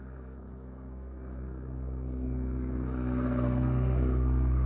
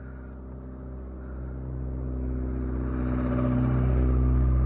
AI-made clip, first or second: first